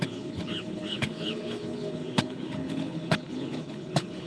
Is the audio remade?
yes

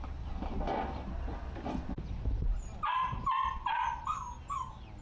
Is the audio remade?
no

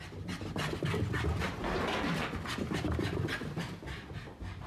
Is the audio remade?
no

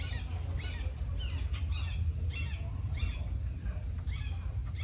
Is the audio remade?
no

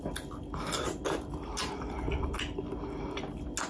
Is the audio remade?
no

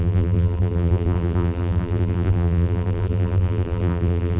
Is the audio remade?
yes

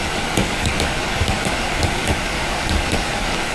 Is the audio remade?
yes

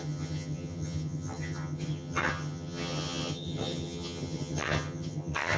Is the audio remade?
yes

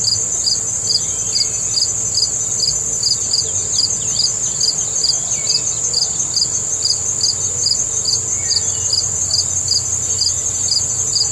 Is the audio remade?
no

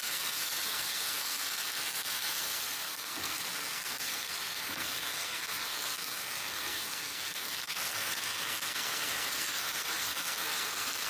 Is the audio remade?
yes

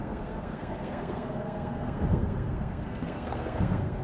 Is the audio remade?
yes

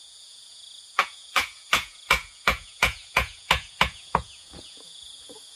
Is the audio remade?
yes